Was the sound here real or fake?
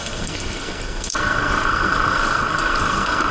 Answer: fake